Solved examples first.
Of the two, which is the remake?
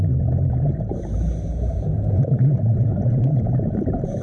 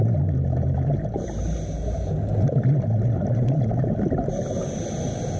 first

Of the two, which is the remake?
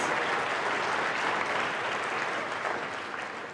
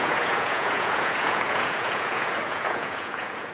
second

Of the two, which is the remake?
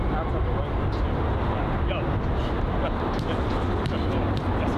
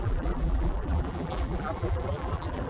second